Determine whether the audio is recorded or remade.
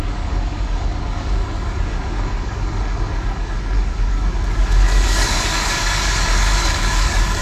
remade